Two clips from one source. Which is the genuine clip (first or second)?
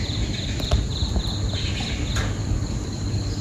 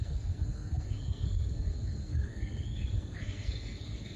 first